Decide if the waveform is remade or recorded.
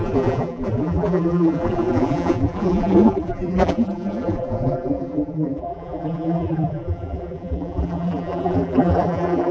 remade